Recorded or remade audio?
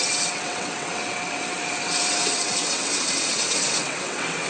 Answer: remade